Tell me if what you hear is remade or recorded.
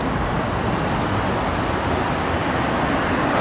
recorded